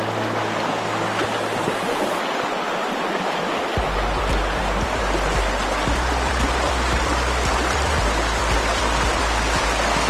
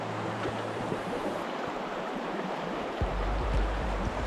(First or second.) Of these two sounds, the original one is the first